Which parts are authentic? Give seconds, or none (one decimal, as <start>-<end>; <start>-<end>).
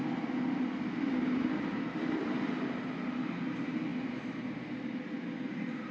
0.0-5.9